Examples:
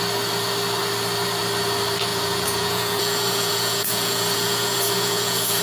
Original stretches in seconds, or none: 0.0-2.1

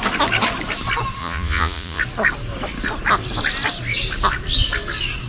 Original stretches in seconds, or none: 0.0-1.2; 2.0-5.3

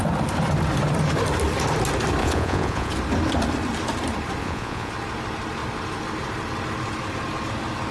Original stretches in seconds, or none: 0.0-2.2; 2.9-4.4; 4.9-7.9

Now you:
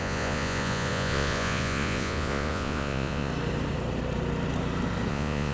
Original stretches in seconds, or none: 3.3-5.1

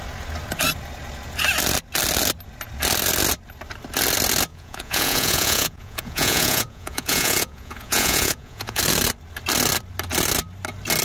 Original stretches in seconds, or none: 0.0-4.5; 8.8-11.0

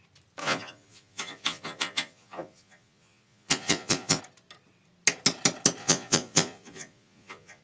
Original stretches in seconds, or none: 0.0-0.4; 4.2-5.8

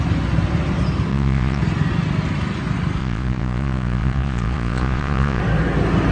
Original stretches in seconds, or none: 0.0-1.1; 1.6-3.0; 5.4-6.1